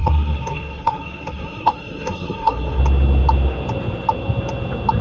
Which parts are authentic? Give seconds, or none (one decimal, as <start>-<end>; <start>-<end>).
2.8-5.0